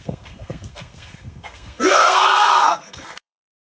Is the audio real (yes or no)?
no